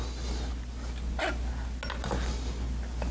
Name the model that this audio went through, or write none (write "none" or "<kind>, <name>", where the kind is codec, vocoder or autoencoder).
none